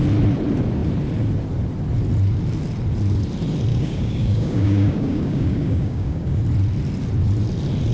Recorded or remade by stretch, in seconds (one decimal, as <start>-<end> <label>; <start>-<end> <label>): 0.0-3.7 recorded; 3.7-6.4 remade; 6.4-7.9 recorded